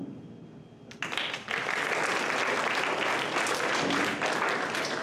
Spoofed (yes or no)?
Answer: no